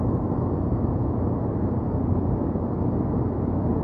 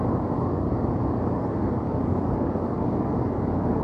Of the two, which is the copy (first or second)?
second